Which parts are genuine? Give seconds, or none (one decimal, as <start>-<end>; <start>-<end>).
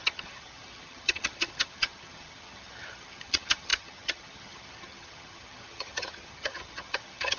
none